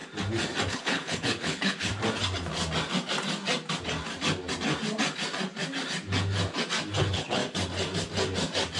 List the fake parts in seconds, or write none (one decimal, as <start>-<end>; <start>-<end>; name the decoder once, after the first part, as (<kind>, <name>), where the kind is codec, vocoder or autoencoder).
0.7-1.9 (codec, HILCodec); 7.0-7.4

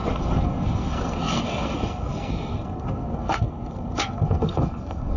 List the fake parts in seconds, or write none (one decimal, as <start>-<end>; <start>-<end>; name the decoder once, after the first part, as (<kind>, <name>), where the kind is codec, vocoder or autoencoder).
0.0-5.2 (codec, SNAC)

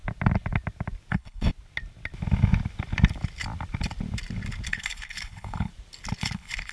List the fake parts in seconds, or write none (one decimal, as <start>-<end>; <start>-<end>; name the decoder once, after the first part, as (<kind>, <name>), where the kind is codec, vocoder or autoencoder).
1.1-1.5 (codec, HILCodec); 4.7-5.7; 6.2-6.7